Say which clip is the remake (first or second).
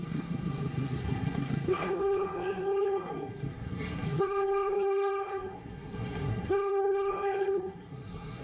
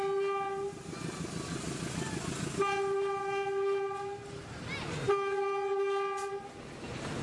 first